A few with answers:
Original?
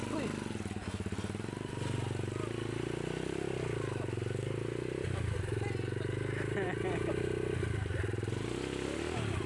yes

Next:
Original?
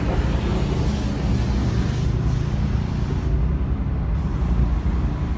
yes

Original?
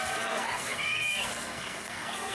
no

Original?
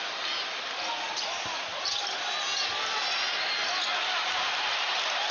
yes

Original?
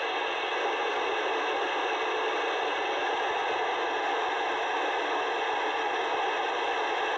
yes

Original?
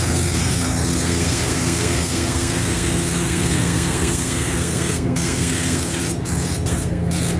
no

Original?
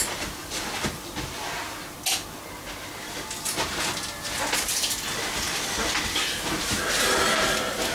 yes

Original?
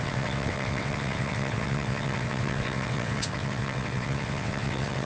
no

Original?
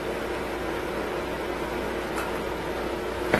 yes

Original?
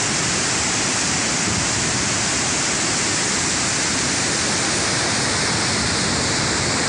yes